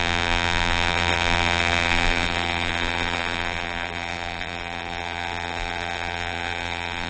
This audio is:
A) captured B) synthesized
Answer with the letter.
B